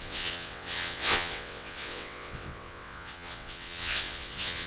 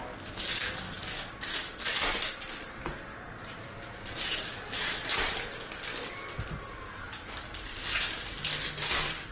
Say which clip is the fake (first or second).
first